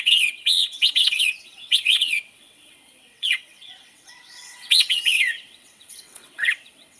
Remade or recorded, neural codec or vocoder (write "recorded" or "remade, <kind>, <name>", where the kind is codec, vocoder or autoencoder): remade, vocoder, WaveNeXt